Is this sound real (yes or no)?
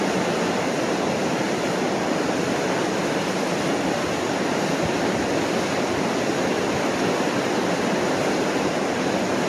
yes